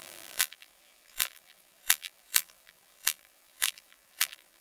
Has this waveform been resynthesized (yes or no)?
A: yes